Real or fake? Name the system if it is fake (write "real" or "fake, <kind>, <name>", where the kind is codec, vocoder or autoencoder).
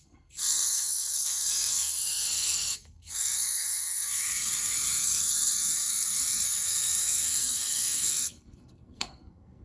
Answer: fake, codec, SNAC